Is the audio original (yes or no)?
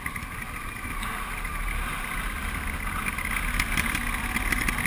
yes